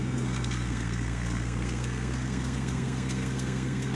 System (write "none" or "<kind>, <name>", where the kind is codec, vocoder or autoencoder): codec, SNAC